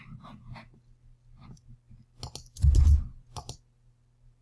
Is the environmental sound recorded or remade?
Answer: recorded